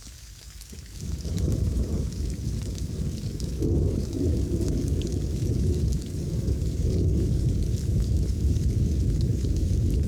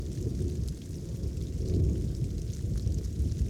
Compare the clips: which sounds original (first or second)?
second